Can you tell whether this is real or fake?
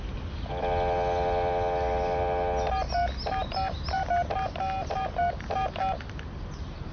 real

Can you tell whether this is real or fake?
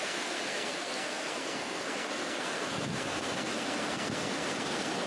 fake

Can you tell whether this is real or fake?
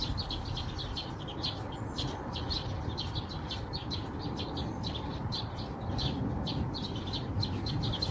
real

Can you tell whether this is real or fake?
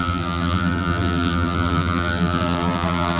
fake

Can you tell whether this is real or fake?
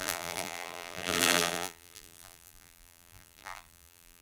fake